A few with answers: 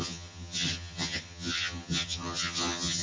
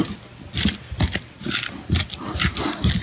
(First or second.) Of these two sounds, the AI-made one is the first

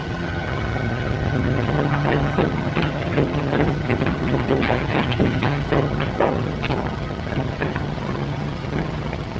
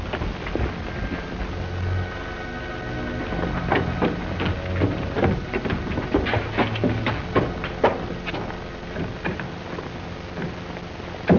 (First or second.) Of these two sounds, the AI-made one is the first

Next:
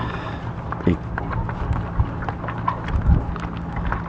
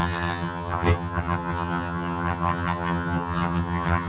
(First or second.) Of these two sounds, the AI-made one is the second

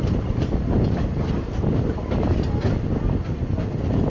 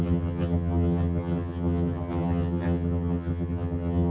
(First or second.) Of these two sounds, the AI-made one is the second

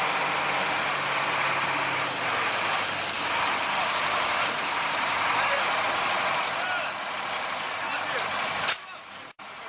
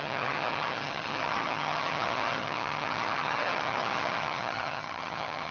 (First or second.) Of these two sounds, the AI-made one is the second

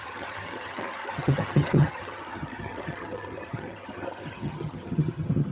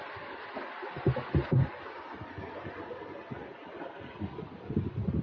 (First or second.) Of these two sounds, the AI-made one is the first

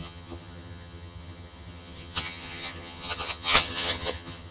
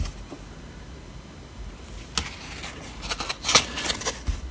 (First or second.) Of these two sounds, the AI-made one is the first